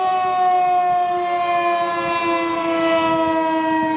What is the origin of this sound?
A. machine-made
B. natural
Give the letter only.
B